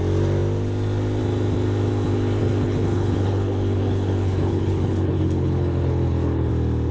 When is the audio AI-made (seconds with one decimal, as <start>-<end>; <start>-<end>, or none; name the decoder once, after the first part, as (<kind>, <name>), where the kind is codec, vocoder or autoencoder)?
2.4-6.5 (codec, HILCodec)